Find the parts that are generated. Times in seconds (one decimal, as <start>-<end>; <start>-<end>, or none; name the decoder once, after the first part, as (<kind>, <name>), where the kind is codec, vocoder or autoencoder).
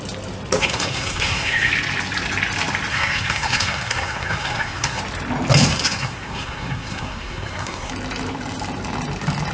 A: 0.6-1.7 (codec, SNAC); 2.9-5.0; 5.7-7.9